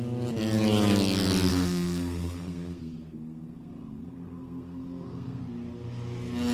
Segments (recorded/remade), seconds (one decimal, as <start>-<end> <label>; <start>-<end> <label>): 0.0-1.5 recorded; 1.5-5.4 remade; 5.4-6.5 recorded